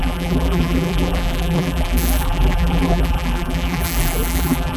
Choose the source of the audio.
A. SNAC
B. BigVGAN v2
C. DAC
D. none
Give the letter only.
B